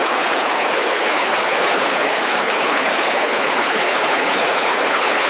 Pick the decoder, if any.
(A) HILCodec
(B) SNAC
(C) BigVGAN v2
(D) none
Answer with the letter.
A